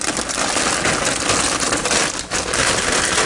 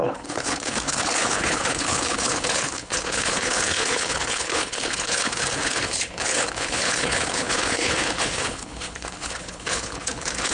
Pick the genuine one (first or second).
first